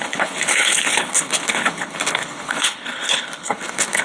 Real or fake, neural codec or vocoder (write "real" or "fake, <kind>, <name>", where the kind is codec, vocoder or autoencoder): fake, codec, HILCodec